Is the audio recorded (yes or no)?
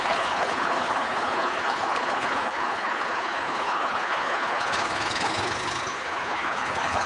no